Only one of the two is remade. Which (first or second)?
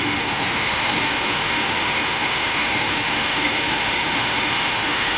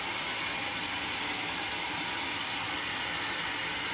first